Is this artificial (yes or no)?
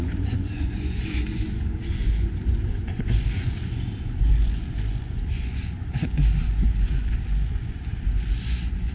yes